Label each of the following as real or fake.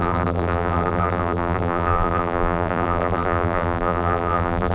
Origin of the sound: fake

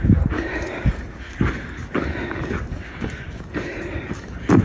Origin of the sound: fake